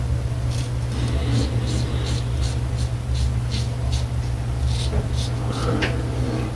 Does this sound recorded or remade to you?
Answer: recorded